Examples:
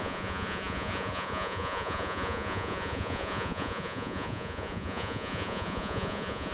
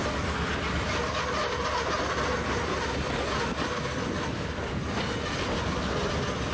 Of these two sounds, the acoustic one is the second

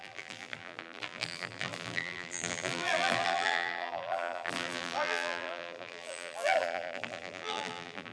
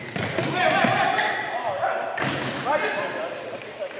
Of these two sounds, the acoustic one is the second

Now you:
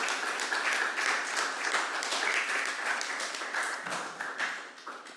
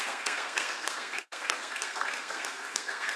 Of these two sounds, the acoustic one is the first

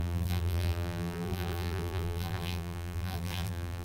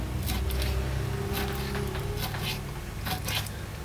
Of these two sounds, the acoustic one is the second